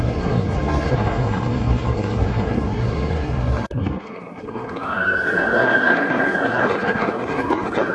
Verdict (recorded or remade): remade